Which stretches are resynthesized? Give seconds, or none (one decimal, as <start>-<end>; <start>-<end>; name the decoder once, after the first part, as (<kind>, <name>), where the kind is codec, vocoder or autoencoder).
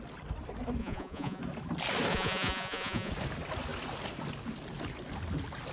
0.8-1.4 (vocoder, Vocos); 2.1-3.1